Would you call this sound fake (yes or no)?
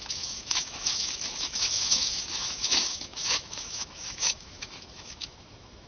yes